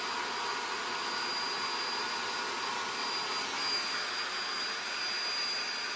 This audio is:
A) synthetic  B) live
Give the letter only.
B